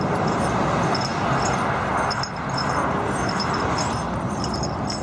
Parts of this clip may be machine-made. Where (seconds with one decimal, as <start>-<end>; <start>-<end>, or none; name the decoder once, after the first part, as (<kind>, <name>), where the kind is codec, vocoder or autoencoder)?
none